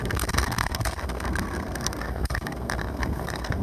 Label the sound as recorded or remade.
remade